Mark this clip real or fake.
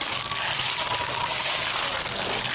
real